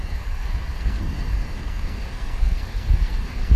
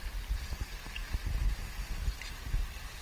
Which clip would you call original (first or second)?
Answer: second